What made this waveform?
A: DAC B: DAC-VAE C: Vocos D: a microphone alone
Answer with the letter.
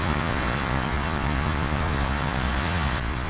C